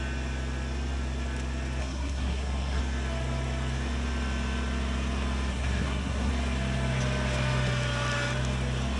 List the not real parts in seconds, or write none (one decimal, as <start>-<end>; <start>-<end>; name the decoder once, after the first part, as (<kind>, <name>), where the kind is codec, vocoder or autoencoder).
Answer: 1.8-2.8 (codec, SNAC); 5.5-6.3